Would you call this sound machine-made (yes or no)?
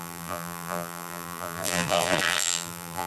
yes